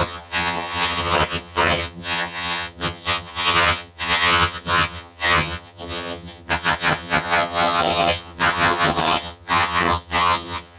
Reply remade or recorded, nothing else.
remade